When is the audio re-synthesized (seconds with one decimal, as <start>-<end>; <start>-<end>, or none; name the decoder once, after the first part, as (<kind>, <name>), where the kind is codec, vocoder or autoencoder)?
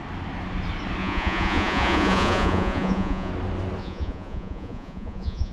1.0-3.3 (vocoder, Vocos); 3.8-5.5